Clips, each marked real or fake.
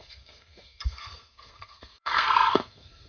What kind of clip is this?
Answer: fake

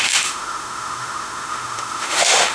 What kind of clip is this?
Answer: fake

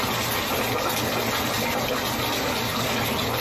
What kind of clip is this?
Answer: real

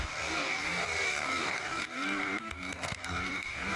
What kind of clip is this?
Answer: fake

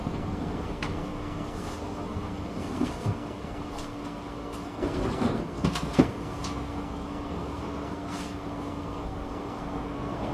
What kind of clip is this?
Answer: fake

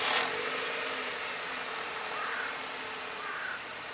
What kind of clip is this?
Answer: real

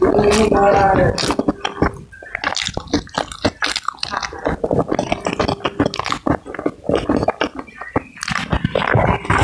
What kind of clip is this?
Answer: real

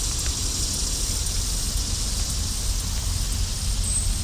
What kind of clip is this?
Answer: real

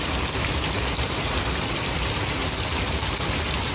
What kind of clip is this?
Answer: real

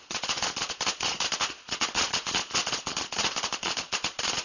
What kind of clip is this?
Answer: fake